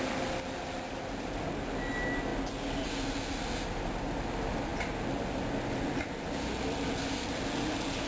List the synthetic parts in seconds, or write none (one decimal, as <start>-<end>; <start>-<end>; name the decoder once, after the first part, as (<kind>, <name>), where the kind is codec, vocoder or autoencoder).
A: none